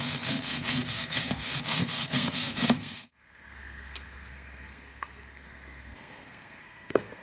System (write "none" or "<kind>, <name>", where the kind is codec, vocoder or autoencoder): codec, SNAC